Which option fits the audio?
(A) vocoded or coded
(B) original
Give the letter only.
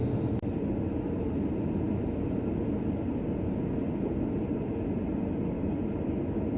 B